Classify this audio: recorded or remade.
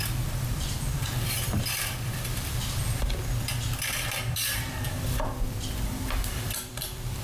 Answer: remade